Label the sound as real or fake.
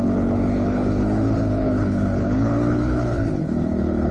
fake